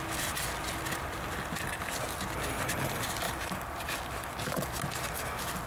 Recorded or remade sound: recorded